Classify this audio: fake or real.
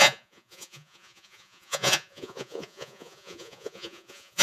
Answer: fake